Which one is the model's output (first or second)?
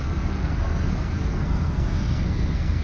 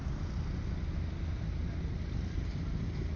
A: first